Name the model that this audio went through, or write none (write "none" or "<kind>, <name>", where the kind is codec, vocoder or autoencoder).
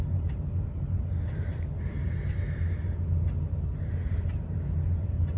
none